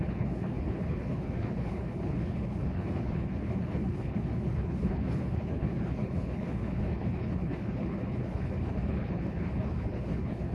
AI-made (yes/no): yes